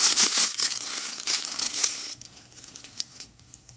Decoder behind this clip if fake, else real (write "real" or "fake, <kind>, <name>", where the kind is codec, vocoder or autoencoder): fake, codec, SNAC